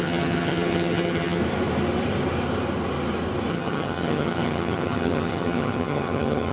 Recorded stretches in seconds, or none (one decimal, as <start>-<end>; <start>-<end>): 1.4-3.5